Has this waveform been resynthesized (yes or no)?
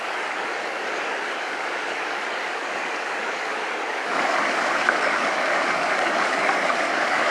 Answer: yes